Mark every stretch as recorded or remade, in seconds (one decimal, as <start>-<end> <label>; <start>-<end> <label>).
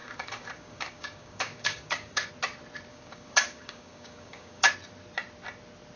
0.0-2.3 remade; 2.3-2.9 recorded; 2.9-4.7 remade; 4.7-6.0 recorded